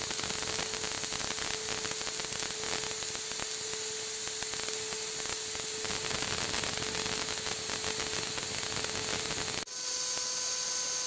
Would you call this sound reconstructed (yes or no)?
no